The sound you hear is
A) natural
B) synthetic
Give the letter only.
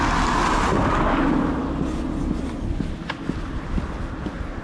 A